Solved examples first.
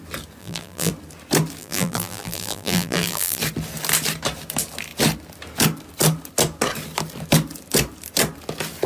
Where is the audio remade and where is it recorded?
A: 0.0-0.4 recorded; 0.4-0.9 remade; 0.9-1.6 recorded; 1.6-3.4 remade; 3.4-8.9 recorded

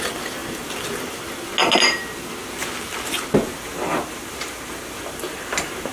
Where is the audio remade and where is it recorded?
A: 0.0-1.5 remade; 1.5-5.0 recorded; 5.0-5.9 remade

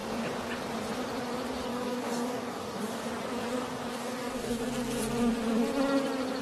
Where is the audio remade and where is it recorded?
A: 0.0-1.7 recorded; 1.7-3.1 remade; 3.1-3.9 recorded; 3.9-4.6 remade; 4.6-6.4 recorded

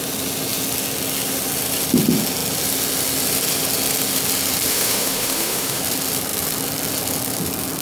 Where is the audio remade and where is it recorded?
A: 0.0-4.7 recorded; 4.7-5.8 remade; 5.8-7.8 recorded